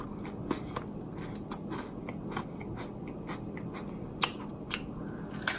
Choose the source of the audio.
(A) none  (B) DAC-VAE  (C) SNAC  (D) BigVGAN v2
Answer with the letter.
A